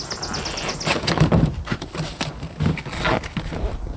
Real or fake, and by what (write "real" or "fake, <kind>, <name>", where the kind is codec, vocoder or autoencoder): real